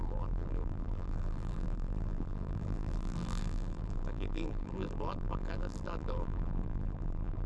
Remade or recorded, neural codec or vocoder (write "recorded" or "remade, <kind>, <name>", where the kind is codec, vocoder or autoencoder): remade, vocoder, BigVGAN v2